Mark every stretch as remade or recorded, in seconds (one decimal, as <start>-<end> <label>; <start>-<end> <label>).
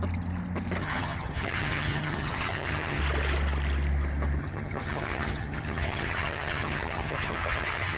0.0-0.8 recorded; 0.8-3.0 remade; 3.0-4.4 recorded; 4.4-8.0 remade